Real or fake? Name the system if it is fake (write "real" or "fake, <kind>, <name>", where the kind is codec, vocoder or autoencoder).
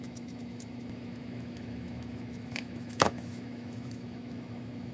fake, autoencoder, DAC-VAE